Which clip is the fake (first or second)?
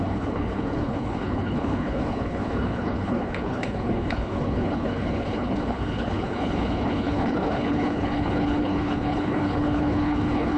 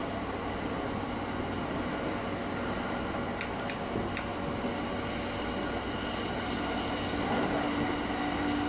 first